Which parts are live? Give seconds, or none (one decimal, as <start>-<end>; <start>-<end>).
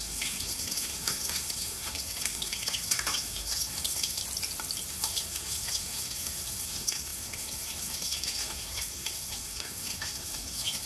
4.2-4.9